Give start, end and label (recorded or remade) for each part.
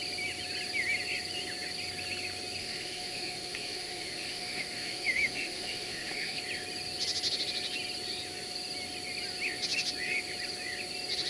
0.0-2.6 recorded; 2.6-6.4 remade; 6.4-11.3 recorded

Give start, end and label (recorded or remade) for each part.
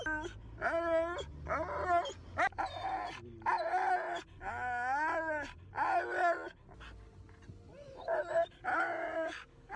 0.0-8.7 recorded; 8.7-9.8 remade